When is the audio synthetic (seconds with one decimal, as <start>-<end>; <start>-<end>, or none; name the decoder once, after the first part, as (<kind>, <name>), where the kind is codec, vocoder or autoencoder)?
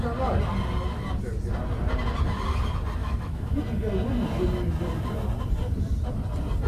3.0-3.6 (autoencoder, DAC-VAE)